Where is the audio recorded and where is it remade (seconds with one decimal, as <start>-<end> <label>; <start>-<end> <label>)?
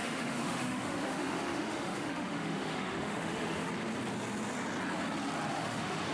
0.0-3.7 remade; 3.7-5.5 recorded; 5.5-6.1 remade